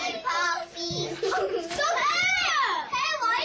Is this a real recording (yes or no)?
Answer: no